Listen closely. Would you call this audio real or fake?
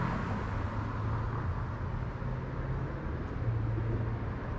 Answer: real